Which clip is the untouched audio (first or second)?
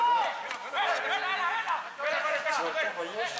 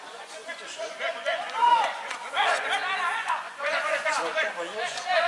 first